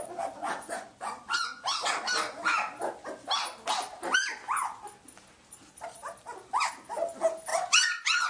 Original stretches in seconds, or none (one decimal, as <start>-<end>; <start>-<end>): 0.0-0.4; 1.6-7.5